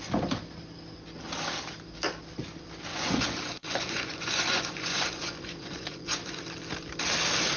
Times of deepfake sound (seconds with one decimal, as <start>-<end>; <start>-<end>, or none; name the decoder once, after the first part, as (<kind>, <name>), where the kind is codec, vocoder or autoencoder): 2.9-6.4 (vocoder, Vocos)